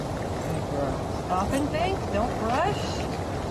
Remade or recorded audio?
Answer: recorded